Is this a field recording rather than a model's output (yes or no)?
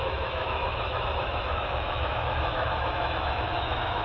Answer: no